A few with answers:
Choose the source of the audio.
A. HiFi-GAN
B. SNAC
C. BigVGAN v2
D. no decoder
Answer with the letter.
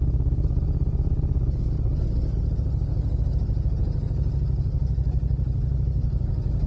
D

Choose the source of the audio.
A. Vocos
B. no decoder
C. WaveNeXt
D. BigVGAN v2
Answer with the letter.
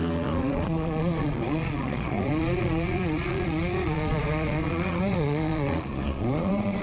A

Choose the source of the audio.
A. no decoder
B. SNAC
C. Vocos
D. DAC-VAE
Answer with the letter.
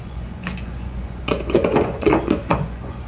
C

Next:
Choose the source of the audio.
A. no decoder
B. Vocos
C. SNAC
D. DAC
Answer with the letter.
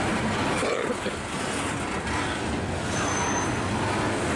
A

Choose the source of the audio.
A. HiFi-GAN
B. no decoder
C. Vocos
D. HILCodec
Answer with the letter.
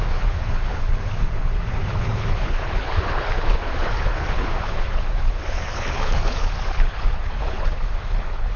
D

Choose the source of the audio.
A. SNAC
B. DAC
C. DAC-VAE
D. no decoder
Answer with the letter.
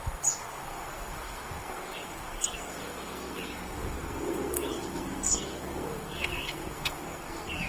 A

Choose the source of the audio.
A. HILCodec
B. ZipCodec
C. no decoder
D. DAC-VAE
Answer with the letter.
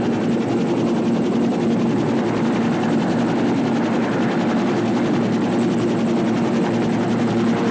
C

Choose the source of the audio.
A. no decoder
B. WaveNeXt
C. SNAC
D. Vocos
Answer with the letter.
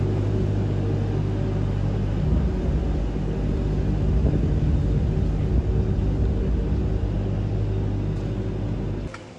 A